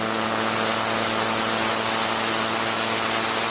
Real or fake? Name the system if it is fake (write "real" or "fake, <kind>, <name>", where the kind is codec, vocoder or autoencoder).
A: real